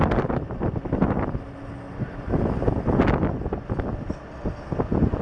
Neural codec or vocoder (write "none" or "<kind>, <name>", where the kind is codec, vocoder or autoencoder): none